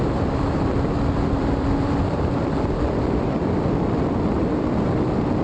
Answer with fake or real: fake